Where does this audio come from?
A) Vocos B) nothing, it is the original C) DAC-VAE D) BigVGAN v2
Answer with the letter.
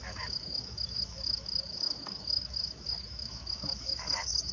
C